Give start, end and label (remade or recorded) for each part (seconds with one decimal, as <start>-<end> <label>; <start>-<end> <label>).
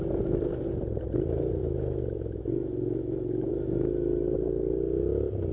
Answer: 0.0-1.6 recorded; 1.6-3.5 remade; 3.5-5.5 recorded